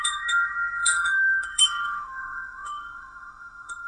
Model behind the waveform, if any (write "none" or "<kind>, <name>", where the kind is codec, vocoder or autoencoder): autoencoder, DAC-VAE